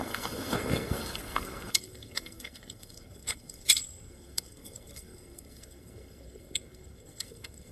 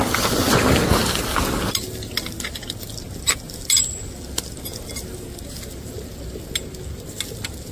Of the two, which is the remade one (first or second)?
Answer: first